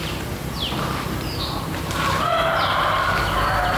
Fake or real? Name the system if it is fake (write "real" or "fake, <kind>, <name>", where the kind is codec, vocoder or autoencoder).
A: fake, vocoder, BigVGAN v2